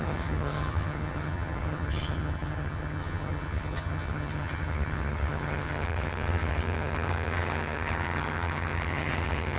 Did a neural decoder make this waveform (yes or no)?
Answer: yes